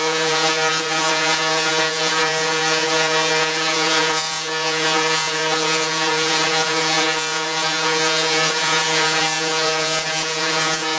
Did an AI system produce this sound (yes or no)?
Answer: yes